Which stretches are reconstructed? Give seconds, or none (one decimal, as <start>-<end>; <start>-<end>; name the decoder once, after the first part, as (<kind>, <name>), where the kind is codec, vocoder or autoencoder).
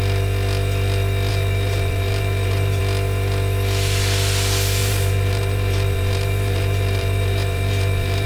1.3-2.8 (vocoder, BigVGAN v2); 4.8-8.3